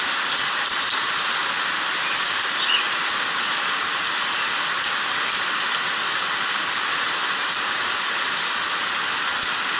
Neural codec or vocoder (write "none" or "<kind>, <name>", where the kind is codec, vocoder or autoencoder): none